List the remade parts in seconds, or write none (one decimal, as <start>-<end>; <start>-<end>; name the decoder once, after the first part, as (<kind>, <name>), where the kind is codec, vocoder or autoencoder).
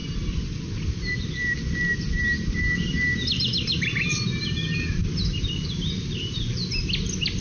none